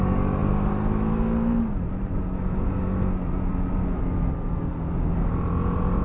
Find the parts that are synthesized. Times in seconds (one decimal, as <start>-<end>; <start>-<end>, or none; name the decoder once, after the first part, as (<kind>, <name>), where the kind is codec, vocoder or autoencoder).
none